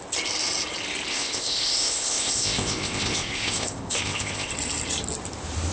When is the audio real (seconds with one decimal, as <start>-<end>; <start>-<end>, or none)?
0.0-1.1; 4.5-5.7